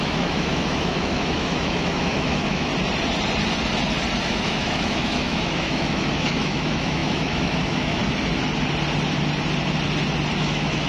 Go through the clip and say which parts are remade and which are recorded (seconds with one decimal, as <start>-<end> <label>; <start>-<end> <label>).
0.0-2.7 remade; 2.7-4.2 recorded; 4.2-8.0 remade; 8.0-10.4 recorded; 10.4-10.9 remade